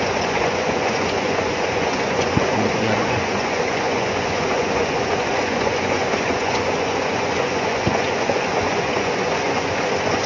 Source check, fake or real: fake